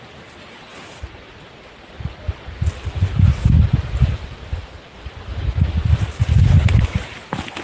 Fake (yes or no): yes